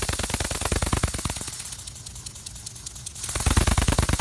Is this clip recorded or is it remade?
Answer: recorded